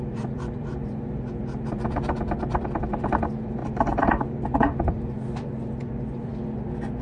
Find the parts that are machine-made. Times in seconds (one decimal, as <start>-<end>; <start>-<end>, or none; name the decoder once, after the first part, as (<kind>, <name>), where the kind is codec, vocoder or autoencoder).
0.0-6.3 (vocoder, BigVGAN v2)